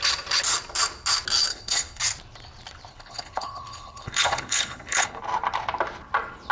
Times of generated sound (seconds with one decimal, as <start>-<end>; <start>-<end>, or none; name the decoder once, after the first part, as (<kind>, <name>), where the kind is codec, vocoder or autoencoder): 1.5-2.0 (codec, HILCodec); 2.9-5.2